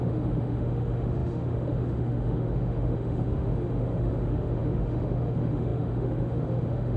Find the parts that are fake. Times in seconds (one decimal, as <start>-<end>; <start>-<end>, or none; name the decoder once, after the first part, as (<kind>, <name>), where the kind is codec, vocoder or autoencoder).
0.0-7.0 (autoencoder, DAC-VAE)